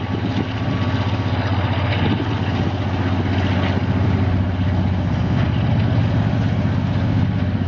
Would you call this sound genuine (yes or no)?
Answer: yes